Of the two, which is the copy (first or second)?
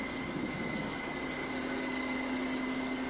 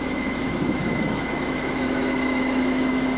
second